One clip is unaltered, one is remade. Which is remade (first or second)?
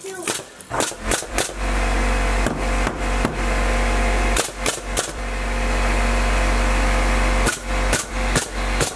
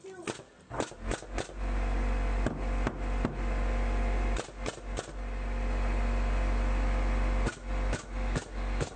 first